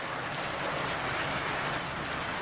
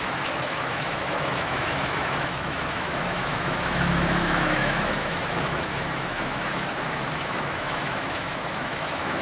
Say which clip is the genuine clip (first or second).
first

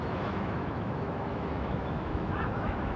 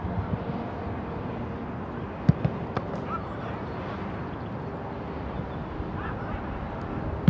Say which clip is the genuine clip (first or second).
second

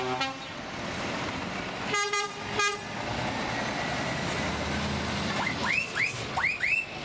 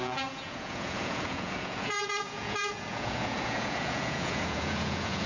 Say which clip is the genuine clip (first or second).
first